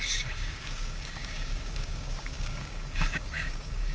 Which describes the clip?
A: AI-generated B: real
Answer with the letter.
A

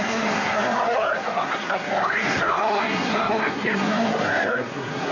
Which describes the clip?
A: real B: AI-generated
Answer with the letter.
B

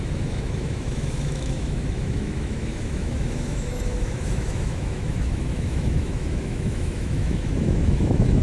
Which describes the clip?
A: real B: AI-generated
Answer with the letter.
B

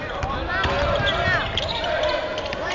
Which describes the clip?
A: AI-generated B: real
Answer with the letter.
B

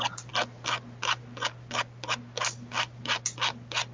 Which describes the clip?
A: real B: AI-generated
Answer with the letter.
A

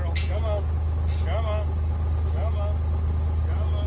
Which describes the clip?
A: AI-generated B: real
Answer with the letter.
B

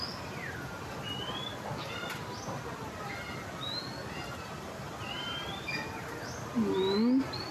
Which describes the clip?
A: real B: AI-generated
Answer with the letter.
A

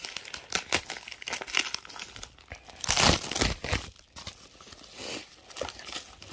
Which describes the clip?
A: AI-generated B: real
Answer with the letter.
B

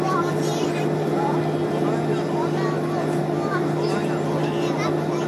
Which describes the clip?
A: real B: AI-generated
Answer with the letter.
A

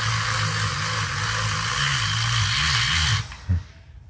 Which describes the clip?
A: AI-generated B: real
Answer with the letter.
B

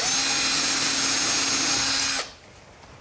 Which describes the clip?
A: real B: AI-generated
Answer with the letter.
A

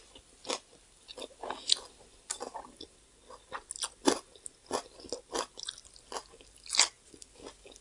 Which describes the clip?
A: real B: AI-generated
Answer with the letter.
A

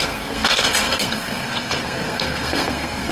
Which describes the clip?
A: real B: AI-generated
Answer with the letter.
B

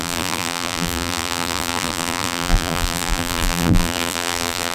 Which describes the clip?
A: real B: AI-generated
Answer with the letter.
B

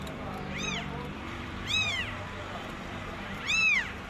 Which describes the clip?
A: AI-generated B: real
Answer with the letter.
A